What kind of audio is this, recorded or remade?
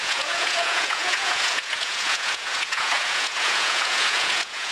remade